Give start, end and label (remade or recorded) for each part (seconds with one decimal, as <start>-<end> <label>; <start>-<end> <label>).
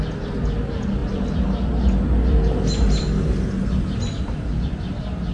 0.0-5.3 recorded